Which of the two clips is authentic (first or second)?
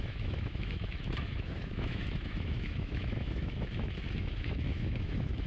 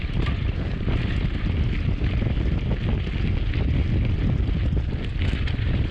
second